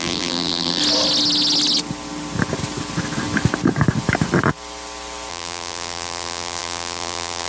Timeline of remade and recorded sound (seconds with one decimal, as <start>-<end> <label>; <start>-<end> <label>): 0.0-0.8 remade; 0.8-5.3 recorded; 5.3-7.5 remade

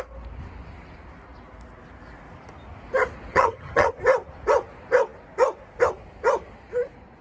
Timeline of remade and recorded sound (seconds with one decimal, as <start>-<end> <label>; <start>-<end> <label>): 0.0-3.3 recorded; 3.3-3.9 remade; 3.9-7.2 recorded

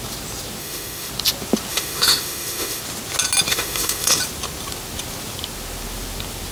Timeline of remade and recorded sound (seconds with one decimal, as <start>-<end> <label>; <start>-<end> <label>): 0.0-0.6 recorded; 0.6-1.1 remade; 1.1-1.7 recorded; 1.7-2.8 remade; 2.8-3.5 recorded; 3.5-4.2 remade; 4.2-6.5 recorded

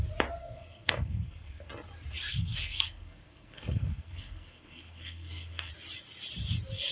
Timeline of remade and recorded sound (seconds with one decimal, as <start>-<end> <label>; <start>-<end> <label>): 0.0-0.4 recorded; 0.4-1.7 remade; 1.7-2.3 recorded; 2.3-5.7 remade; 5.7-6.9 recorded

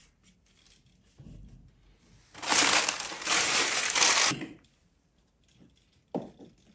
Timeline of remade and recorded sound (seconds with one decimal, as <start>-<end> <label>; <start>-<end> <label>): 0.0-6.7 recorded

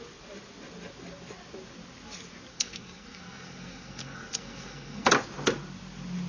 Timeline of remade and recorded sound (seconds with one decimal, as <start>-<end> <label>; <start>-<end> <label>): 0.0-2.5 recorded; 2.5-5.1 remade; 5.1-6.3 recorded